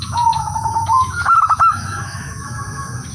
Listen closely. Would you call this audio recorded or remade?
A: remade